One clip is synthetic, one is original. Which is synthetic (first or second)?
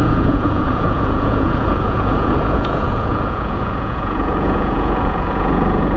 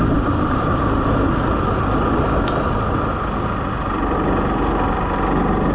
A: first